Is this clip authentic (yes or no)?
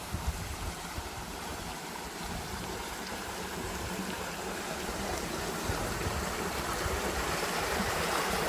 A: no